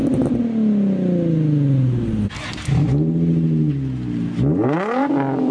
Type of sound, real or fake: real